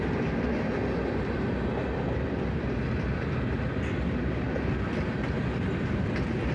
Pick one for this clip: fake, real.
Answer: real